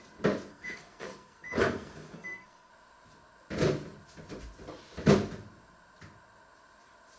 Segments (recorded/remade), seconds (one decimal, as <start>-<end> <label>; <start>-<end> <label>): 0.0-0.5 recorded; 0.5-2.7 remade; 2.7-7.2 recorded